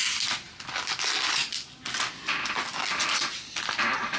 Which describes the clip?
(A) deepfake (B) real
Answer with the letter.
B